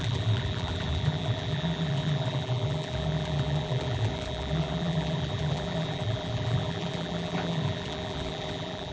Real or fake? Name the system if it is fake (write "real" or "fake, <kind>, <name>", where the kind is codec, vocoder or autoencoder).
fake, vocoder, BigVGAN v2